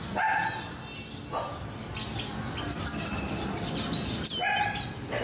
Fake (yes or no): no